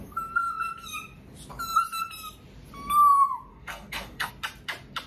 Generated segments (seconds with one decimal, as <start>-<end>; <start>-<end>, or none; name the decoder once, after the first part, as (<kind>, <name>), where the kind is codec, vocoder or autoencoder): 3.5-4.3 (codec, SNAC)